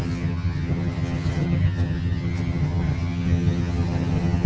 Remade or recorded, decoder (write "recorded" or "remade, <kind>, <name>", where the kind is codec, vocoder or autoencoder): remade, vocoder, HiFi-GAN